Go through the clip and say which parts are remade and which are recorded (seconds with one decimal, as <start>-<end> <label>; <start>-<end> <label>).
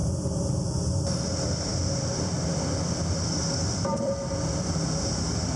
0.0-1.7 recorded; 1.7-5.0 remade; 5.0-5.6 recorded